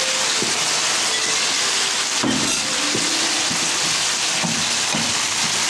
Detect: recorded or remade recorded